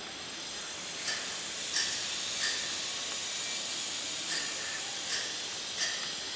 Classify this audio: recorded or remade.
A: recorded